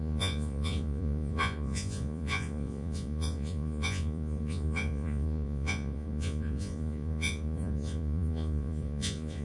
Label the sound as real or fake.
fake